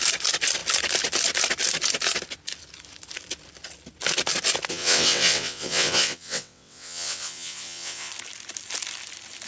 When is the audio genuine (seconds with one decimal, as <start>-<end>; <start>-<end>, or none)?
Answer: 0.0-4.7; 8.1-9.5